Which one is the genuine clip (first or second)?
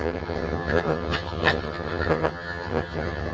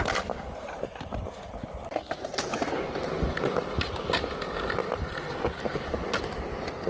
second